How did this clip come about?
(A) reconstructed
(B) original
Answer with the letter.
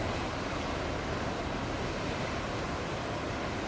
B